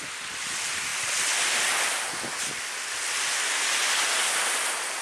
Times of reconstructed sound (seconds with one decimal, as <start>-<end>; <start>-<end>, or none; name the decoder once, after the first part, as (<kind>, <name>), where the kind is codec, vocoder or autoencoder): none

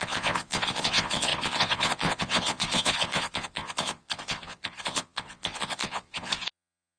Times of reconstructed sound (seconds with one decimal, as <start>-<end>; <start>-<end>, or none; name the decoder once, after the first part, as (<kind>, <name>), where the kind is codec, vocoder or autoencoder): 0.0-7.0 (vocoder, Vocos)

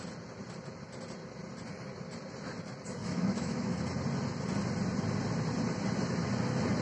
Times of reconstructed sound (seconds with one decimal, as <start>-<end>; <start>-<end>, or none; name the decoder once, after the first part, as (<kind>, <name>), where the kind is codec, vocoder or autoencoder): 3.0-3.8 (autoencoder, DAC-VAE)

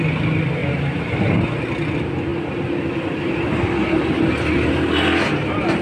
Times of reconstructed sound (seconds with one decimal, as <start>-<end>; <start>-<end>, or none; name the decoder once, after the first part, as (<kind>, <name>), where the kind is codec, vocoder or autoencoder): 0.6-1.5 (vocoder, BigVGAN v2); 2.3-4.3